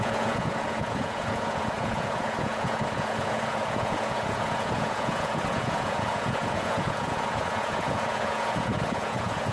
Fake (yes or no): yes